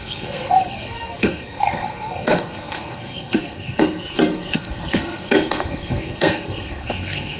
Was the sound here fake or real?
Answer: fake